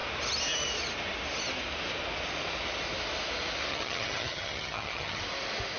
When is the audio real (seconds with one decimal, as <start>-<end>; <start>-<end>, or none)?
0.0-3.7; 5.2-5.8